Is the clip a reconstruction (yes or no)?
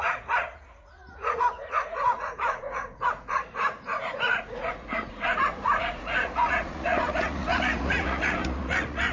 yes